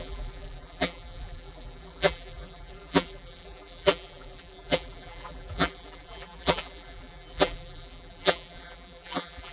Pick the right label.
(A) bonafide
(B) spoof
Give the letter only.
B